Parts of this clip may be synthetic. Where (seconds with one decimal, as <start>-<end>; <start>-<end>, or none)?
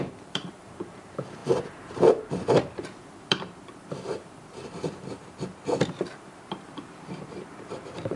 0.0-8.2